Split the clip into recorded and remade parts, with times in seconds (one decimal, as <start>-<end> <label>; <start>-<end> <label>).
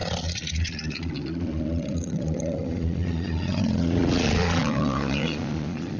0.0-6.0 remade